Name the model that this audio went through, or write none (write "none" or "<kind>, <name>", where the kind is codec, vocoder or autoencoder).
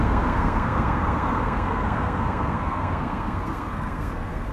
codec, SNAC